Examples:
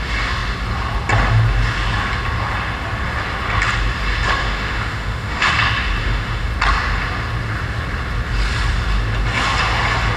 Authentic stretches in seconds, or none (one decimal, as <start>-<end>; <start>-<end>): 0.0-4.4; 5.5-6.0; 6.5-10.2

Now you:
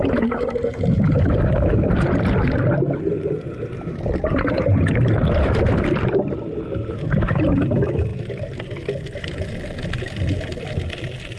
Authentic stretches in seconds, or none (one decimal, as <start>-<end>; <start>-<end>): 0.0-11.4

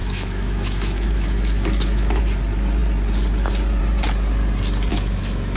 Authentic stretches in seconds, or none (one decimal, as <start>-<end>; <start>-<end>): 2.2-4.9

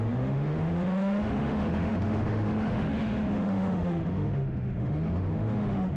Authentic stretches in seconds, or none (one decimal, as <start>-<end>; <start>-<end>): none